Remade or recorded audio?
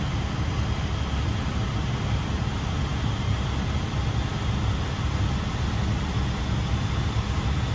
recorded